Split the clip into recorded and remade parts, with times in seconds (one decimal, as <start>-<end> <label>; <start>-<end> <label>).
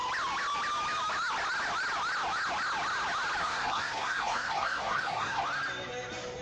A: 0.0-3.4 recorded; 3.4-5.4 remade; 5.4-6.4 recorded